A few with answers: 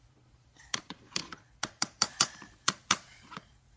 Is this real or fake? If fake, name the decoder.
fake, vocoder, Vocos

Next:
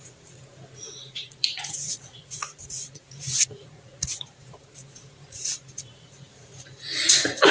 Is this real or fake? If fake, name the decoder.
fake, vocoder, Vocos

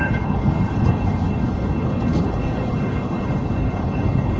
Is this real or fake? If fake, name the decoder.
fake, codec, HILCodec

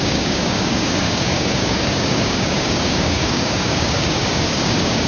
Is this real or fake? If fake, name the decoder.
fake, codec, DAC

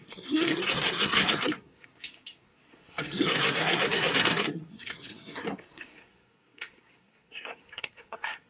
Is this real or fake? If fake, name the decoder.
fake, codec, SNAC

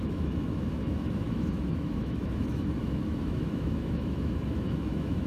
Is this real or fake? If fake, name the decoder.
fake, autoencoder, DAC-VAE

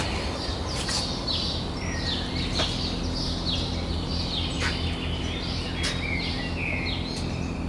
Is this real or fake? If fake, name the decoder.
real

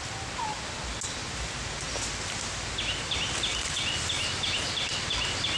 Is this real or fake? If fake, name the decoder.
real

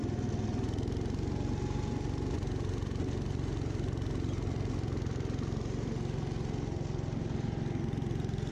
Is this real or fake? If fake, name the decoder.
real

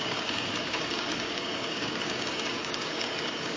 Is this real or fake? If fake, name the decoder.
fake, codec, DAC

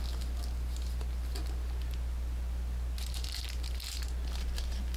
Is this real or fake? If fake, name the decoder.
real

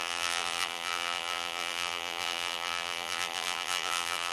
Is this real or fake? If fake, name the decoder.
fake, vocoder, BigVGAN v2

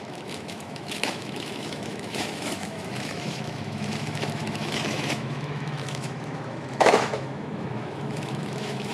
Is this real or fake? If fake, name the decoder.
fake, autoencoder, DAC-VAE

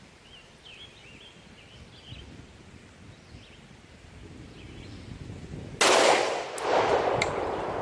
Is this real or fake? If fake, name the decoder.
real